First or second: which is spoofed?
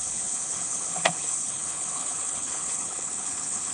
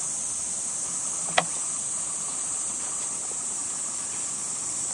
first